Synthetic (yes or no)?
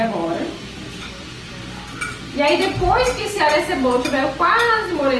no